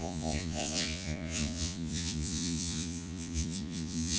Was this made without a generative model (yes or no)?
no